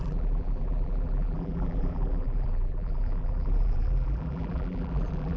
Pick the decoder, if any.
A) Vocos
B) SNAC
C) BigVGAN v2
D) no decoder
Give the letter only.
C